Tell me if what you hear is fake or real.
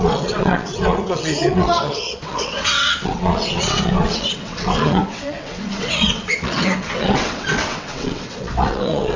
fake